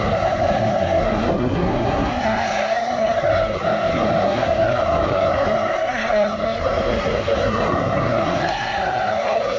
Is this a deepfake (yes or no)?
yes